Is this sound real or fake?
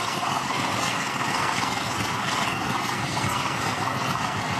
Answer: fake